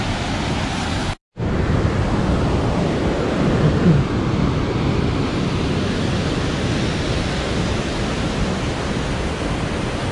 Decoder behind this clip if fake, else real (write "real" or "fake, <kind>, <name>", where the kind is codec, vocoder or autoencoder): real